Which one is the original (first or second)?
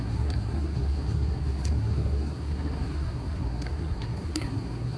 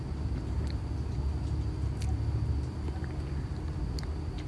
second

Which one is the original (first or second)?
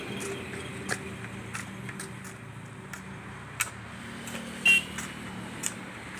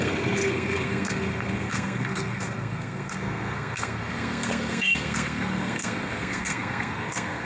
first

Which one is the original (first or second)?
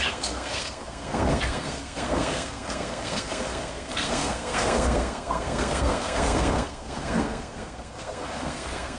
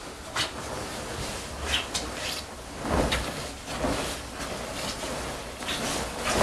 second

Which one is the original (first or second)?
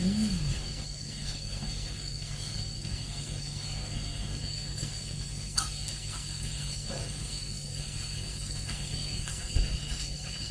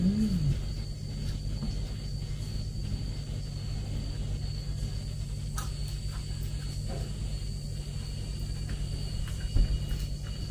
second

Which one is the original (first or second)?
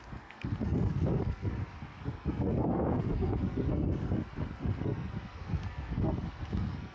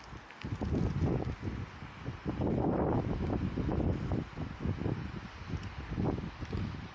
second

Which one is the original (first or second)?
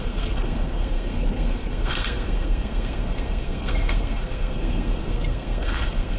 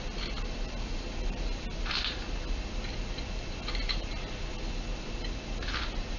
second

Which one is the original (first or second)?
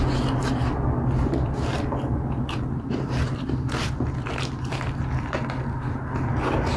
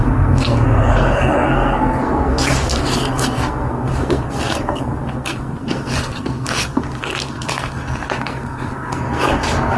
first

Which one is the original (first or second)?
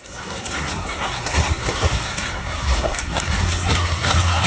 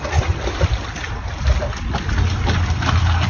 second